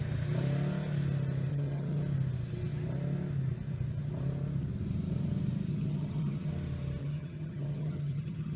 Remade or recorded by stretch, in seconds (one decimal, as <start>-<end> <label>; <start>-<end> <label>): 0.0-1.5 recorded; 1.5-2.0 remade; 2.0-5.7 recorded; 5.7-6.5 remade; 6.5-7.0 recorded; 7.0-8.6 remade